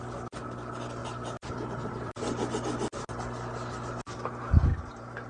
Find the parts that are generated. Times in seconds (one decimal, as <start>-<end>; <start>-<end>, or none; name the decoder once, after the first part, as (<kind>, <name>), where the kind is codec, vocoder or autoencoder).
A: 1.0-2.1 (vocoder, BigVGAN v2); 4.7-5.3